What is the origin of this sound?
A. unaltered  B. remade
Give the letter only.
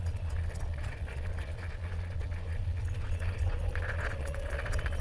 B